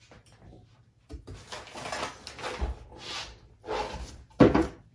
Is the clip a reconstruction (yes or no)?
no